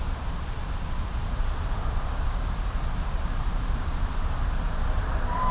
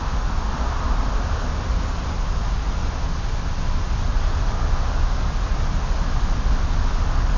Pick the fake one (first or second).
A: first